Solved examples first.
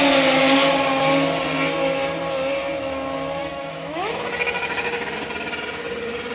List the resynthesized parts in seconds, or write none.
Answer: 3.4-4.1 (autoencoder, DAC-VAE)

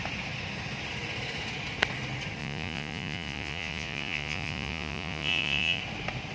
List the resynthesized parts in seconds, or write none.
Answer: 2.4-5.8 (vocoder, Vocos)